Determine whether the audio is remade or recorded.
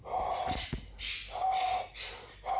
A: recorded